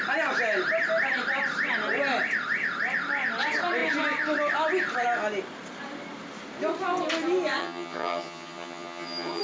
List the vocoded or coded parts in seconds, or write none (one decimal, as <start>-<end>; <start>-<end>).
7.6-9.4